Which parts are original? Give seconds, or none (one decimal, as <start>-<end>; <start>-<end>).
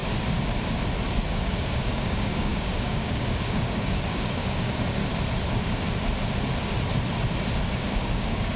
0.0-1.1; 5.0-7.7